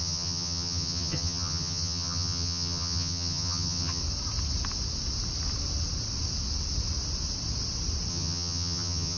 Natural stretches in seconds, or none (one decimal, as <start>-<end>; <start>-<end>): 4.0-8.1